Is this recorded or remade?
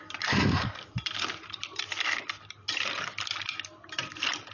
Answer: recorded